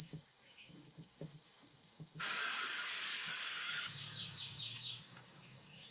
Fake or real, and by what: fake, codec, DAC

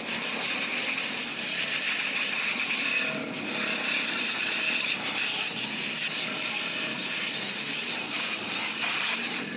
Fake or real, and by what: real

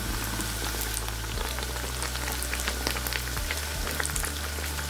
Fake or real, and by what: real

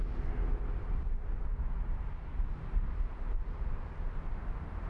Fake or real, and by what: real